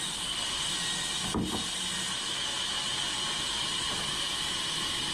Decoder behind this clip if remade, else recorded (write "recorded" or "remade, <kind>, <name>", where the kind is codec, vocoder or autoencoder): recorded